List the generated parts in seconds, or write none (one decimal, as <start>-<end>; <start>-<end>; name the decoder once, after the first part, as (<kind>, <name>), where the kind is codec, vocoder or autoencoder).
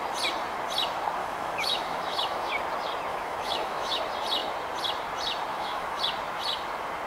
1.2-2.5 (autoencoder, DAC-VAE); 3.1-4.0; 5.5-6.0